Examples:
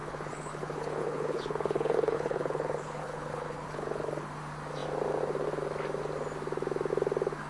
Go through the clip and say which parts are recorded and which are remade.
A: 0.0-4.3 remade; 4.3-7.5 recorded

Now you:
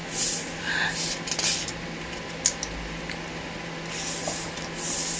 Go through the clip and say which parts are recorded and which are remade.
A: 0.0-5.2 recorded

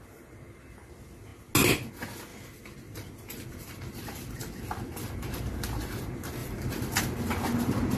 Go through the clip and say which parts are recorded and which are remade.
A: 0.0-2.3 recorded; 2.3-5.0 remade; 5.0-6.4 recorded; 6.4-7.0 remade; 7.0-8.0 recorded

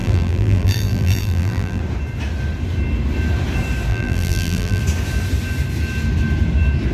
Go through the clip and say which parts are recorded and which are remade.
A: 0.0-1.8 remade; 1.8-3.9 recorded; 3.9-4.8 remade; 4.8-6.9 recorded

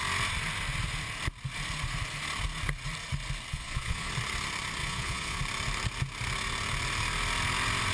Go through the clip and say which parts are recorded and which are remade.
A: 0.0-3.5 recorded; 3.5-4.1 remade; 4.1-4.8 recorded; 4.8-5.4 remade; 5.4-7.9 recorded

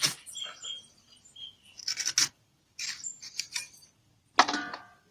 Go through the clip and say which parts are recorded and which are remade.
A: 0.0-3.1 recorded; 3.1-3.6 remade; 3.6-5.1 recorded

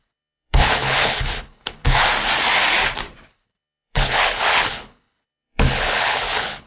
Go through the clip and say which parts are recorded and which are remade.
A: 0.0-2.1 remade; 2.1-3.3 recorded; 3.3-6.7 remade

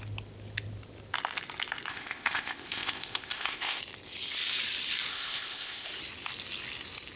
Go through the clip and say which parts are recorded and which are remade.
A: 0.0-1.9 recorded; 1.9-3.8 remade; 3.8-5.1 recorded; 5.1-5.9 remade; 5.9-7.2 recorded